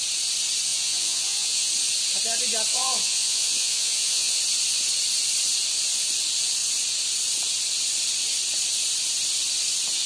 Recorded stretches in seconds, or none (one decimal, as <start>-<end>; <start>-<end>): 0.0-0.7; 1.7-2.7; 4.4-10.1